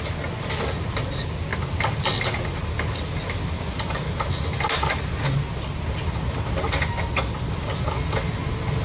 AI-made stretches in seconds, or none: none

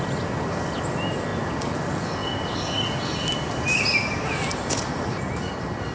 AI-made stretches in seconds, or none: none

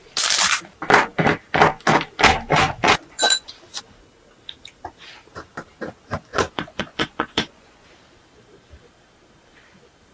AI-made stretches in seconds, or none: 2.5-3.5 (vocoder, Vocos); 6.3-7.9